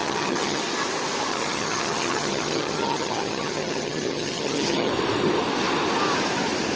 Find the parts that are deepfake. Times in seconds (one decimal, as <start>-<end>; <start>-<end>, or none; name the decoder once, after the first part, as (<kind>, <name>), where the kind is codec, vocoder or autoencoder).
0.0-0.6 (vocoder, HiFi-GAN); 1.3-4.9

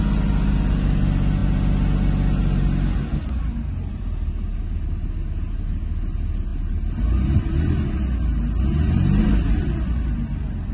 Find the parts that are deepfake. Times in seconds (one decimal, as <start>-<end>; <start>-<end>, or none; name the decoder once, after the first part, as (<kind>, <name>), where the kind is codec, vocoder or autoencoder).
none

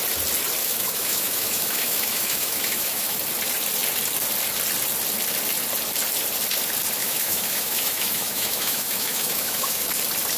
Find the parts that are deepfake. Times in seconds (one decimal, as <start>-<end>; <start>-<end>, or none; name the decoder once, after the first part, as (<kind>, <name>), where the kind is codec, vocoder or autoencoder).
0.6-3.2 (autoencoder, DAC-VAE); 7.0-9.9

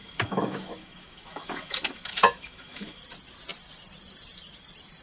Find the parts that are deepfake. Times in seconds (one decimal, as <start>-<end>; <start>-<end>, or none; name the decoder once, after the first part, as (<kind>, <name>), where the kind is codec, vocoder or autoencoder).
0.0-3.0 (autoencoder, DAC-VAE)

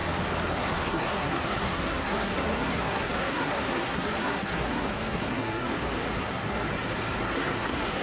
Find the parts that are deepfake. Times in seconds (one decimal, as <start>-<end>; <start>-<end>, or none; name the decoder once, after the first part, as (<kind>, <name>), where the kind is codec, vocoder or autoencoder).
0.6-5.7 (codec, SNAC); 6.2-6.7; 7.2-8.0

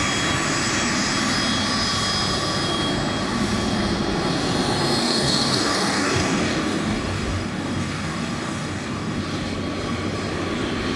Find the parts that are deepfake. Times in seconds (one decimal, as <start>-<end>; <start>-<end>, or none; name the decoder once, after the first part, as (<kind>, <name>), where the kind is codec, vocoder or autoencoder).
5.0-9.2 (codec, DAC)

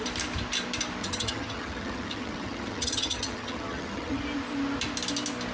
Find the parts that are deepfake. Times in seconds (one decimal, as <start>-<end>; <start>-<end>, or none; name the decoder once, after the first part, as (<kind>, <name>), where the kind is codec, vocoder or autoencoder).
1.0-4.2 (vocoder, HiFi-GAN)